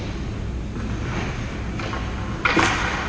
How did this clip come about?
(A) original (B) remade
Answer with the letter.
A